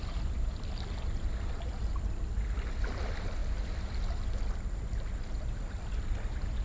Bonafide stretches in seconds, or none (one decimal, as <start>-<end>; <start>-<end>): 0.0-6.6